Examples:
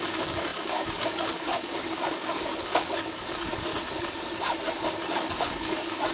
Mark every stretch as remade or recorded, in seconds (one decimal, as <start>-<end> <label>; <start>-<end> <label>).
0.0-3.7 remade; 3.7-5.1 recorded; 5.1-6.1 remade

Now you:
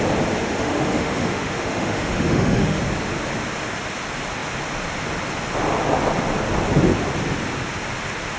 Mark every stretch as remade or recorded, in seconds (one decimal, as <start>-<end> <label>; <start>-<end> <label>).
0.0-0.4 recorded; 0.4-2.8 remade; 2.8-8.4 recorded

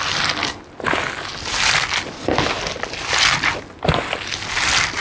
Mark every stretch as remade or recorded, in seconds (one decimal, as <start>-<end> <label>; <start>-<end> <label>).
0.0-5.0 recorded

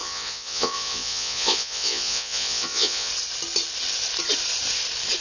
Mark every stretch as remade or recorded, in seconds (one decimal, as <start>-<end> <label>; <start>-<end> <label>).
0.0-3.1 remade; 3.1-5.2 recorded